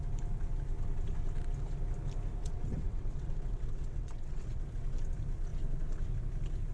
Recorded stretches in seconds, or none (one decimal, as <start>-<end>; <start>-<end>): 0.0-2.4; 4.6-6.7

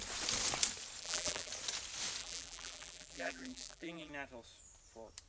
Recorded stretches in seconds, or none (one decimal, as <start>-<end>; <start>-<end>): 0.0-1.0; 1.5-2.2; 4.1-5.3

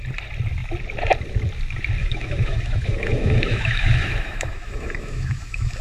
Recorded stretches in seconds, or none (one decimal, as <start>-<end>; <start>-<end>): 0.0-2.0

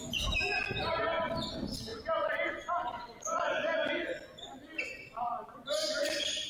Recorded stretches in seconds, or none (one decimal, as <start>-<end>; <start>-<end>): 0.0-6.5

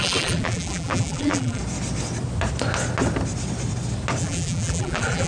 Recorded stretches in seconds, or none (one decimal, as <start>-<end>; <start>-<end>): 1.6-4.2

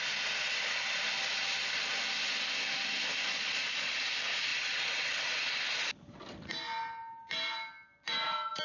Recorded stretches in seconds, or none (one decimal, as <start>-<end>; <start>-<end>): 0.0-3.3; 4.0-8.6